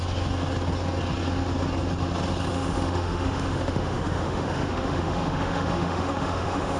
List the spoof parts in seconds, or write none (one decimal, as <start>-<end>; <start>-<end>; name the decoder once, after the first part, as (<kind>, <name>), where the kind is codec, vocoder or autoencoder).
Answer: 2.5-6.8 (autoencoder, DAC-VAE)